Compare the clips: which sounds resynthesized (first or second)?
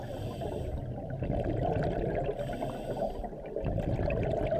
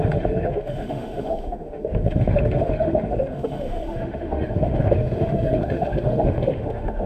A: second